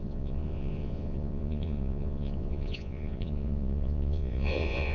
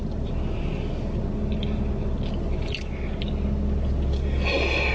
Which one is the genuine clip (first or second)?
second